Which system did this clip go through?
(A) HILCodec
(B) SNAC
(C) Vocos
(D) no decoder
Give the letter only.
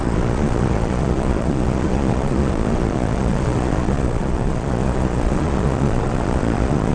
C